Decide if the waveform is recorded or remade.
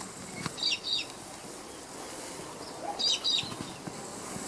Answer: recorded